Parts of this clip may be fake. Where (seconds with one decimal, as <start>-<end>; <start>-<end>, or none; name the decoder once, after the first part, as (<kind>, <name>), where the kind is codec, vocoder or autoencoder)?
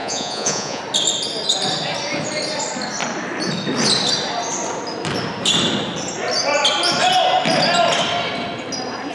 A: 0.0-0.8 (vocoder, Vocos)